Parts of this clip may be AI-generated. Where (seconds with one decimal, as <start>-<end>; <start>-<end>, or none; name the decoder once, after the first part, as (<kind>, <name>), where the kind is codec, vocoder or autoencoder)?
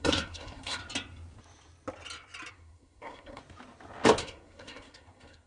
0.0-0.8 (codec, SNAC); 2.5-3.4; 4.2-5.5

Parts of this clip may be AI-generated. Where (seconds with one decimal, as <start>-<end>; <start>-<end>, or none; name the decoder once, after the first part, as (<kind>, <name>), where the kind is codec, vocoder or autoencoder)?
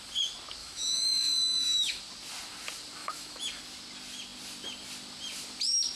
0.6-2.0 (autoencoder, DAC-VAE); 3.0-3.6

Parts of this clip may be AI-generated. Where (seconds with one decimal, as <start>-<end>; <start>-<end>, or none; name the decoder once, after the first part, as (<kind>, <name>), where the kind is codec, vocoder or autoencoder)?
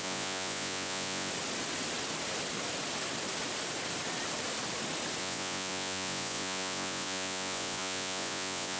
0.0-1.3 (vocoder, Vocos); 5.2-8.8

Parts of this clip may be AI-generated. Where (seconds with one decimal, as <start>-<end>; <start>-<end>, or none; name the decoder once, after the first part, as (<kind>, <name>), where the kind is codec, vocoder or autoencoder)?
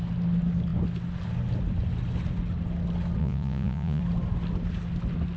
3.2-4.0 (vocoder, Vocos)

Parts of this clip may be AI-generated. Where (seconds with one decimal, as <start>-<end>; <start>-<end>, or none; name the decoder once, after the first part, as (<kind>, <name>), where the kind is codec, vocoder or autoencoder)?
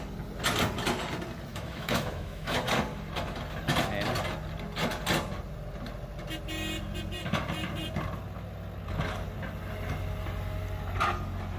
1.5-2.6 (autoencoder, DAC-VAE)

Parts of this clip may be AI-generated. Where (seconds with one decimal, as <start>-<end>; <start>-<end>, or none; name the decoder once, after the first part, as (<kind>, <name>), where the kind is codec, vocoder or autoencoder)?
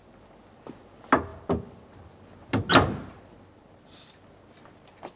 none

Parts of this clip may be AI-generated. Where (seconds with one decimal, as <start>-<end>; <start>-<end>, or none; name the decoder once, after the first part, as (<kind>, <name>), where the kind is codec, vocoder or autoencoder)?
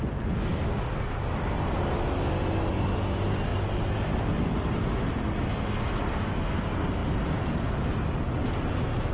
none